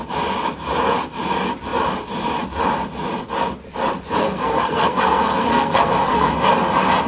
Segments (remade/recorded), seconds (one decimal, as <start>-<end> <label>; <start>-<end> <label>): 0.0-4.2 recorded; 4.2-6.3 remade; 6.3-7.1 recorded